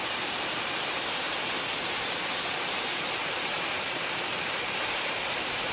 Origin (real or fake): fake